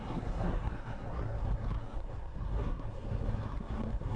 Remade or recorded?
remade